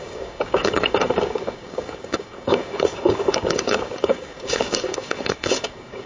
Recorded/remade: remade